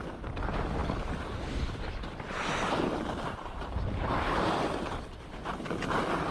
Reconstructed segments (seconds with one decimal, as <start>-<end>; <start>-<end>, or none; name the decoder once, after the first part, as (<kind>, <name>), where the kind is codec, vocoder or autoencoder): 0.8-4.6 (vocoder, BigVGAN v2)